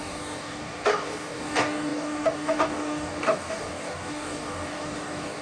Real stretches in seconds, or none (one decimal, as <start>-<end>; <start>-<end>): none